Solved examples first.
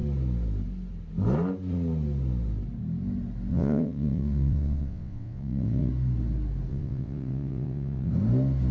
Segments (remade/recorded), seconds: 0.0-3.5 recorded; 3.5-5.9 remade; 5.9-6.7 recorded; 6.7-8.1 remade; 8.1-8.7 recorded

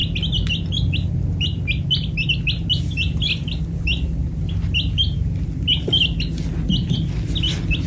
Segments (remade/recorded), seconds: 0.0-7.9 recorded